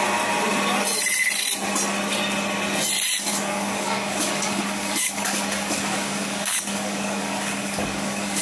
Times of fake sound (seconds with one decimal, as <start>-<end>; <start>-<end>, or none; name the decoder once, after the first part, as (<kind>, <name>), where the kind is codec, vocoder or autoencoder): 3.3-8.4 (codec, DAC)